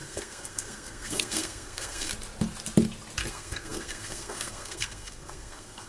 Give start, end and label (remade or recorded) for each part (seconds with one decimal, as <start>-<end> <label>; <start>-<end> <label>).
0.0-2.1 remade; 2.1-3.3 recorded; 3.3-5.9 remade